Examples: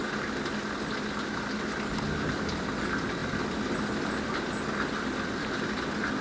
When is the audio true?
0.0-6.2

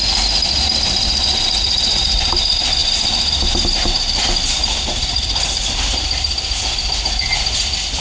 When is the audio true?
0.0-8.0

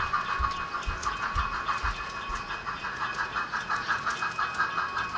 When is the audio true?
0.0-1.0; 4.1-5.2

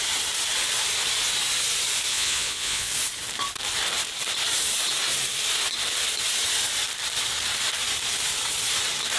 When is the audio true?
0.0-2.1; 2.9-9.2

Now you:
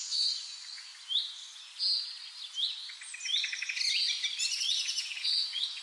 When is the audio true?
0.9-4.4

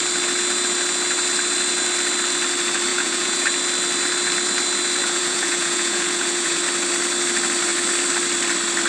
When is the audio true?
0.0-2.9; 3.5-5.0; 6.6-8.9